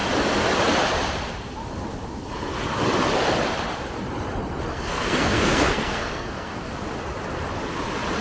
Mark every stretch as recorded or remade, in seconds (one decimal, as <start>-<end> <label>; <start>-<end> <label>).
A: 0.0-4.7 recorded; 4.7-6.7 remade; 6.7-8.2 recorded